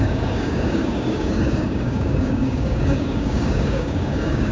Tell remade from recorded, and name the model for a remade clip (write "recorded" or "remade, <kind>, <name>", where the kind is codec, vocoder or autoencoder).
remade, codec, DAC